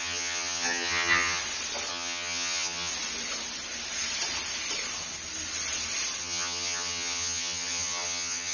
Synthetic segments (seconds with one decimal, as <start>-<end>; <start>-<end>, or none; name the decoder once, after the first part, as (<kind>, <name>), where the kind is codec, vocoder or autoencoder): 0.0-1.4 (vocoder, HiFi-GAN); 1.9-2.9; 6.2-8.5